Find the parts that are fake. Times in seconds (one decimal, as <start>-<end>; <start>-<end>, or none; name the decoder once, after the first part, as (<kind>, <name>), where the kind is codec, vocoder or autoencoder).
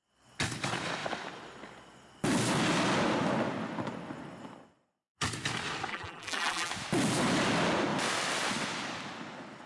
5.9-6.7 (vocoder, BigVGAN v2)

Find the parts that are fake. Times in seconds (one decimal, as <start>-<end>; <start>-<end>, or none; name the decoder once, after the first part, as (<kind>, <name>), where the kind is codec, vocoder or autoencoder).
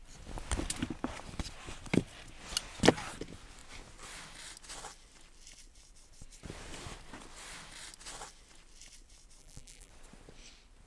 9.4-9.9 (vocoder, BigVGAN v2)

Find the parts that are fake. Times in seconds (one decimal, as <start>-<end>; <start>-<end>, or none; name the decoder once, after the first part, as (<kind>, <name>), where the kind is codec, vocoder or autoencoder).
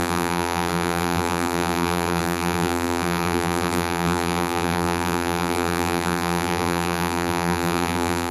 0.0-8.3 (vocoder, BigVGAN v2)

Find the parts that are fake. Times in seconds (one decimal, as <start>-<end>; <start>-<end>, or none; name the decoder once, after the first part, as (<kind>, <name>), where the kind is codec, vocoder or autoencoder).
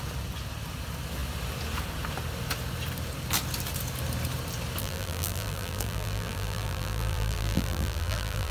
4.8-8.5 (vocoder, BigVGAN v2)